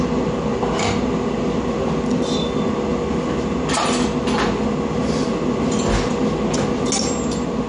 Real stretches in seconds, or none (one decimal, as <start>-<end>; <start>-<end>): 0.0-7.7